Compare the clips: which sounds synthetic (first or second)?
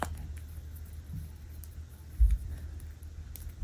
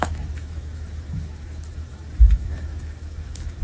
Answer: second